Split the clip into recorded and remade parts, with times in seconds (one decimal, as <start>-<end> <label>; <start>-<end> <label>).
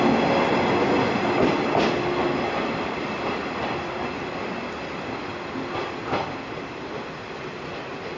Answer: 0.0-2.2 recorded; 2.2-4.0 remade; 4.0-8.2 recorded